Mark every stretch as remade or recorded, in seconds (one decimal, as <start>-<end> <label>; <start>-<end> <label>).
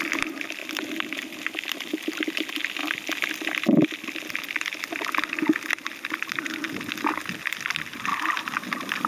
0.0-9.1 recorded